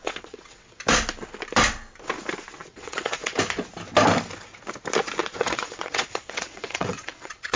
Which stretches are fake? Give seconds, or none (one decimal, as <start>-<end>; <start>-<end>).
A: 0.0-0.8; 2.6-3.4; 5.2-7.6